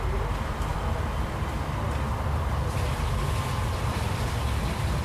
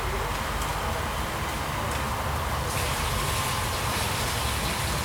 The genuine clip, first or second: second